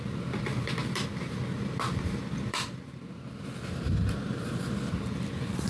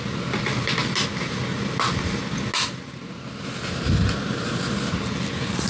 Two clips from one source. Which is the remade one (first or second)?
first